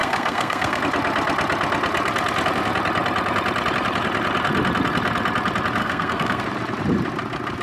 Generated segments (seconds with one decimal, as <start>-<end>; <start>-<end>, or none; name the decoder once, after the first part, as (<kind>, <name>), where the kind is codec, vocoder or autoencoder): 0.0-0.8 (codec, SNAC); 5.8-6.4